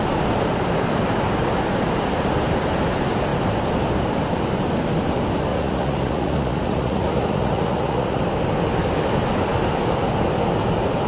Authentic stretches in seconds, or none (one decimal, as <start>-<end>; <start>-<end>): 0.0-5.5; 8.2-11.1